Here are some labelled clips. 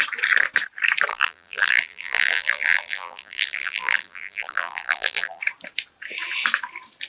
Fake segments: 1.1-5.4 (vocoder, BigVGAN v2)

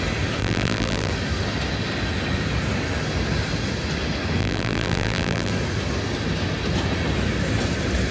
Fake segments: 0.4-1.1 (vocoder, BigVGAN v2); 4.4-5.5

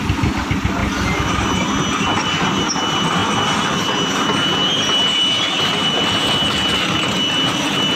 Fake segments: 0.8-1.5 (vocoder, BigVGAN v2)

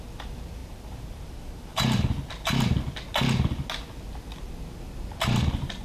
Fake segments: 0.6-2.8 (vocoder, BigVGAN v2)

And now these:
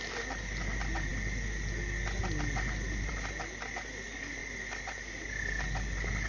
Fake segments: 4.4-5.3 (vocoder, BigVGAN v2)

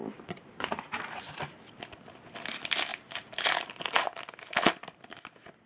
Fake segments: 0.0-1.7 (vocoder, BigVGAN v2)